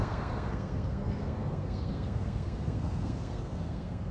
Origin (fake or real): fake